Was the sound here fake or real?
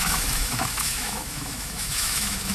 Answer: fake